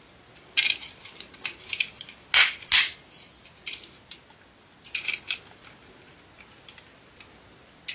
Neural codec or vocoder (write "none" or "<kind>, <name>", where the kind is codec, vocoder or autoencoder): none